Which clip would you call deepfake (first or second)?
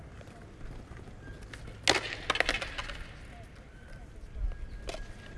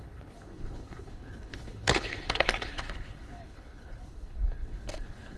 second